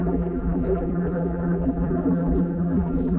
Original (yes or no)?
no